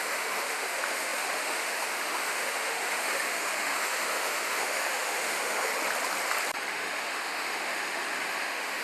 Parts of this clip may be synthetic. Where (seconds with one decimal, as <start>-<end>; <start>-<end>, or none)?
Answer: 0.0-5.7; 6.7-8.8